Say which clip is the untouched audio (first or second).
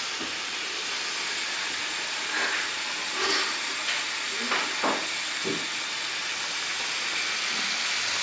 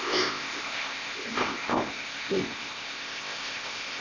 first